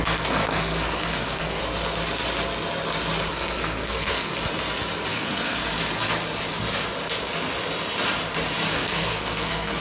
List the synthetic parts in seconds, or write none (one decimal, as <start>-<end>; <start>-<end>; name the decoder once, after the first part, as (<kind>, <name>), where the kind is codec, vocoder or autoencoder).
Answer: 0.0-1.6 (codec, SNAC); 3.3-4.3; 5.1-5.6; 8.7-9.8